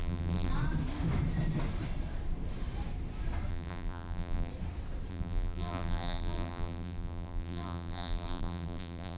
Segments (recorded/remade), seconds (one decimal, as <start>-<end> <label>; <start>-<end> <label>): 0.0-0.5 remade; 0.5-3.5 recorded; 3.5-4.5 remade; 4.5-5.1 recorded; 5.1-9.2 remade